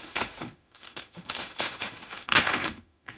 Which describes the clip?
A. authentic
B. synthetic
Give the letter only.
B